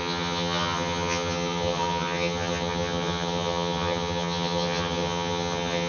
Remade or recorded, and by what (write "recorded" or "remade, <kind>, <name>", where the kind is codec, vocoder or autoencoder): remade, vocoder, HiFi-GAN